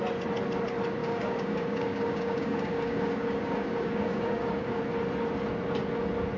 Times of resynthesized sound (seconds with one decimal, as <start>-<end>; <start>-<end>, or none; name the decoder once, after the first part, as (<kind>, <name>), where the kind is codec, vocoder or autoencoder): 1.0-4.8 (codec, DAC)